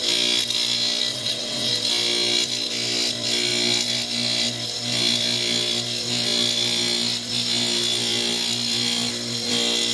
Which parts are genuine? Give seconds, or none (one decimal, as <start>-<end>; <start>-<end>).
0.0-1.1; 1.7-9.9